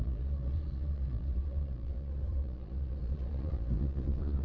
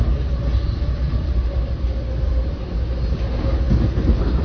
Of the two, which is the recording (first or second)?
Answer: second